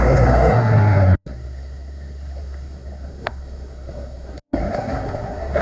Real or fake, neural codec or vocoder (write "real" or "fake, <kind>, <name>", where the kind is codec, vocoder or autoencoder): fake, codec, SNAC